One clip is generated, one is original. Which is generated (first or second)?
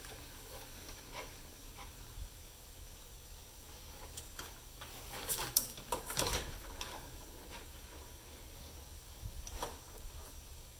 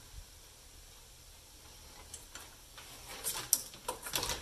first